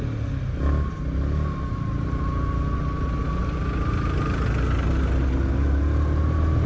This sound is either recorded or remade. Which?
recorded